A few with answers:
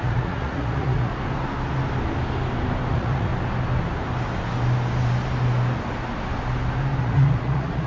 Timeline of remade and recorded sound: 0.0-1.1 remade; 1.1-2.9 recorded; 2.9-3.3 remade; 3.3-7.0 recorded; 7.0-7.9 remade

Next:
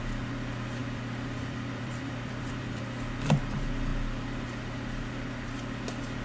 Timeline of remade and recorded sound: 0.0-0.8 recorded; 0.8-3.4 remade; 3.4-6.2 recorded

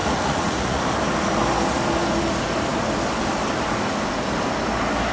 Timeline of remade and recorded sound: 0.0-0.8 remade; 0.8-5.1 recorded

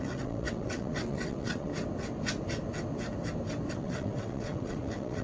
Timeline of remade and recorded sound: 0.0-1.7 remade; 1.7-3.7 recorded; 3.7-5.2 remade

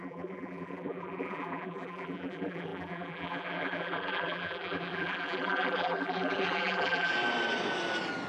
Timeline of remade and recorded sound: 0.0-7.1 remade; 7.1-8.3 recorded

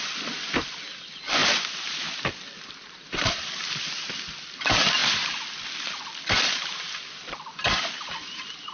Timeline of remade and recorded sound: 0.0-8.7 remade

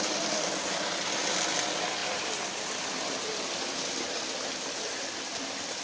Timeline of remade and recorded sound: 0.0-5.8 remade

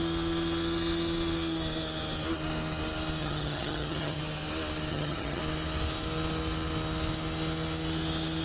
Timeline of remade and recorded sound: 0.0-3.2 recorded; 3.2-4.2 remade; 4.2-4.9 recorded; 4.9-5.4 remade; 5.4-8.4 recorded